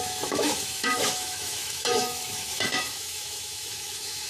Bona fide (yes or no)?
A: no